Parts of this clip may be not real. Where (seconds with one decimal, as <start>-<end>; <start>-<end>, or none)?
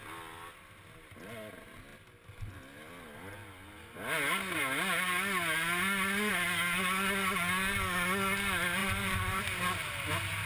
8.8-9.4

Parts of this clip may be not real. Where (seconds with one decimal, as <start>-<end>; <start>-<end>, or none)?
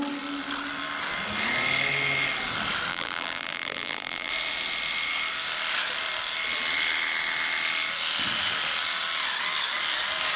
2.9-4.3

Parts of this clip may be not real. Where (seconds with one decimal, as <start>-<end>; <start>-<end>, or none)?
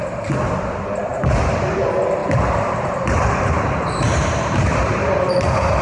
1.1-1.7; 2.2-5.8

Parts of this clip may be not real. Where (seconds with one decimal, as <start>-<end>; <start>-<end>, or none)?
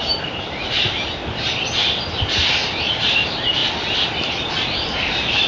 0.0-1.2; 2.9-3.6; 4.5-5.5